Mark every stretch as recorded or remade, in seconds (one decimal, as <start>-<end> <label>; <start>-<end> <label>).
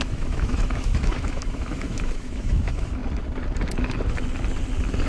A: 0.0-3.0 remade; 3.0-5.1 recorded